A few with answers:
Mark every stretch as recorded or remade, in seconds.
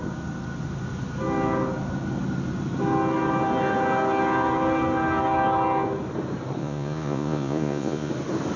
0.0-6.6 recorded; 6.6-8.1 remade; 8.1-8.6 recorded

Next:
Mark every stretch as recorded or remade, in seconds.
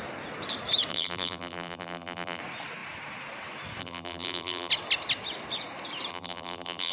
0.0-0.9 recorded; 0.9-2.4 remade; 2.4-3.8 recorded; 3.8-4.7 remade; 4.7-6.1 recorded; 6.1-6.9 remade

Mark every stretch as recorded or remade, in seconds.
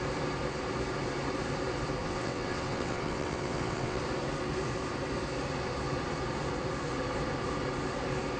0.0-2.0 recorded; 2.0-4.0 remade; 4.0-8.4 recorded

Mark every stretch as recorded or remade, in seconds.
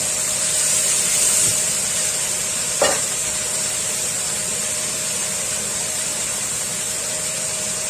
0.0-7.9 remade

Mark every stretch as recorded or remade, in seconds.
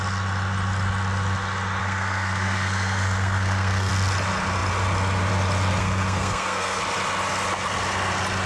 0.0-1.8 recorded; 1.8-3.9 remade; 3.9-5.8 recorded; 5.8-6.8 remade; 6.8-8.5 recorded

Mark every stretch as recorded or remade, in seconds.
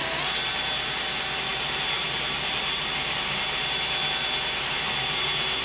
0.0-5.6 recorded